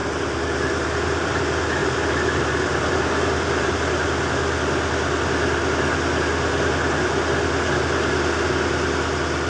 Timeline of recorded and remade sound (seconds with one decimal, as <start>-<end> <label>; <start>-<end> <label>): 0.0-1.4 remade; 1.4-1.8 recorded; 1.8-3.7 remade; 3.7-9.5 recorded